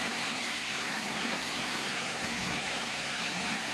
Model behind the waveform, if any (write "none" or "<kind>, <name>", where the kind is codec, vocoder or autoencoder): codec, SNAC